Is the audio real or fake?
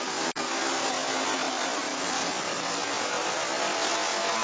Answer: real